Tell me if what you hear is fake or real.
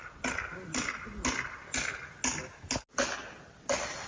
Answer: real